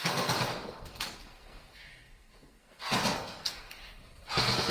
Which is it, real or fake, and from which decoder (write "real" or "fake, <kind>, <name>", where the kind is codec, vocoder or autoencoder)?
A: fake, codec, SNAC